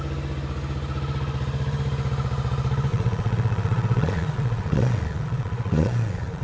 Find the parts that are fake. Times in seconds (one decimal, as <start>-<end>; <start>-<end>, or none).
2.9-6.4